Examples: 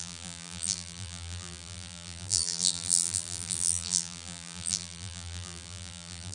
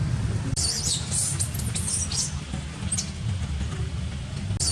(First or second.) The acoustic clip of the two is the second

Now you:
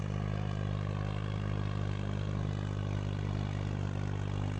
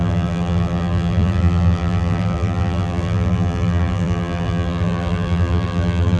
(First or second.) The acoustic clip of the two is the first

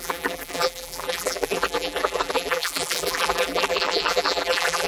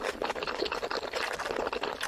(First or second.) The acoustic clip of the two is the second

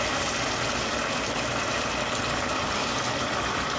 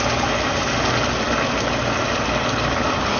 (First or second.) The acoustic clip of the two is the second